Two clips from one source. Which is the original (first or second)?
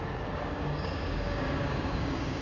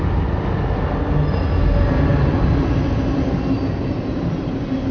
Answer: second